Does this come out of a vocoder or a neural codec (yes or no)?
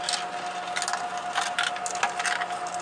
no